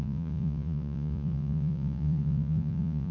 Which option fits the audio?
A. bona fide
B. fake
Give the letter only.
B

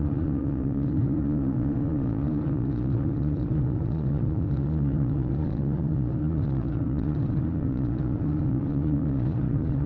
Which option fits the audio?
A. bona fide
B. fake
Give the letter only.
B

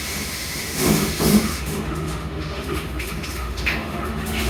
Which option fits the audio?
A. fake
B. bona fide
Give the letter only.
A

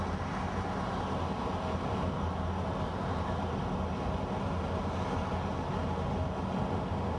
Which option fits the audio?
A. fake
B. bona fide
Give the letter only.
B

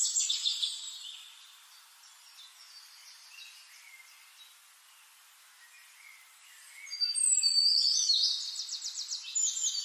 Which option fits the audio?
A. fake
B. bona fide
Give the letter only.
B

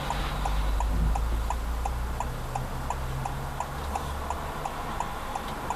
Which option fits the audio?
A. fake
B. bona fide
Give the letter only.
B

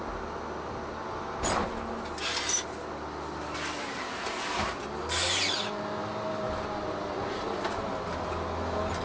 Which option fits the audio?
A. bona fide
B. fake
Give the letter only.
A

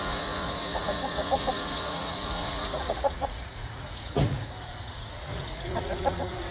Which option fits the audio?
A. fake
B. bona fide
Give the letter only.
A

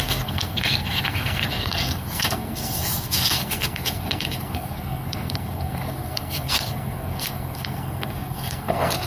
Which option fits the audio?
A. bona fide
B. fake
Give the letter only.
B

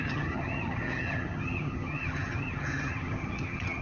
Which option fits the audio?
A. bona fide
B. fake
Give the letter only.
B